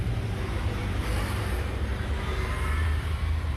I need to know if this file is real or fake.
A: fake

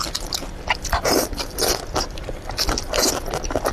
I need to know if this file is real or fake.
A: real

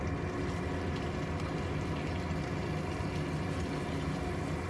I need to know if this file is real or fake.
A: real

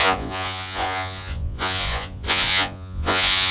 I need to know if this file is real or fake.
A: fake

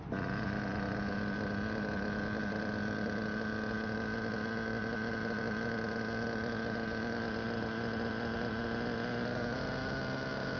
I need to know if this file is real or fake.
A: real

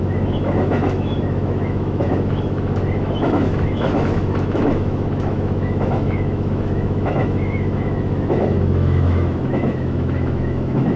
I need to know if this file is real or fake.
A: fake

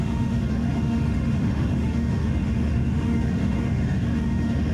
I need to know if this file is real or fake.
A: fake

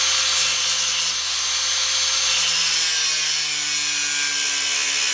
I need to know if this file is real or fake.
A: real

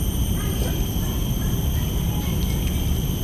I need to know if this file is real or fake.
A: real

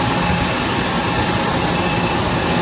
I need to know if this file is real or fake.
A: real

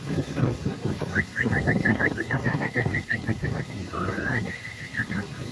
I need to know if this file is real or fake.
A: fake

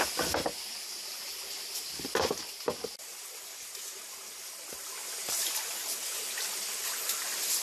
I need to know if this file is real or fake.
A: real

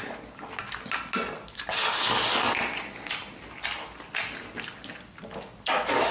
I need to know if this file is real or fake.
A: real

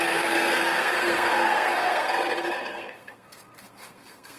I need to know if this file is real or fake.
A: fake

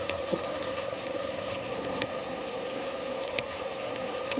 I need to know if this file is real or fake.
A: fake